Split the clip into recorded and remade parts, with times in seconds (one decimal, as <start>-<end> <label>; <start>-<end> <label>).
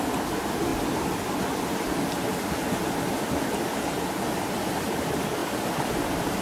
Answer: 0.0-6.4 recorded